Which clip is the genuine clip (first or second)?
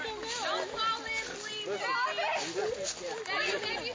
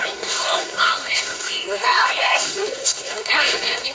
first